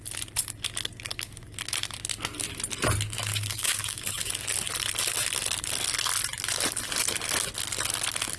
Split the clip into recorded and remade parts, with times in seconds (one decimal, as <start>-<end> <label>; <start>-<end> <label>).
0.0-1.1 recorded; 1.1-1.6 remade; 1.6-3.3 recorded; 3.3-4.3 remade; 4.3-8.4 recorded